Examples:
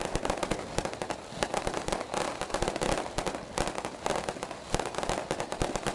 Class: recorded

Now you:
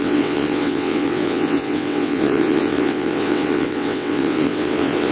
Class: remade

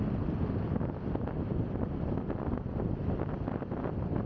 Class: recorded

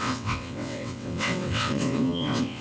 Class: remade